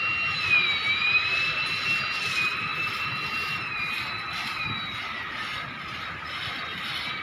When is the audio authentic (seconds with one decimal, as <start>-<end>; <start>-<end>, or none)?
0.0-7.2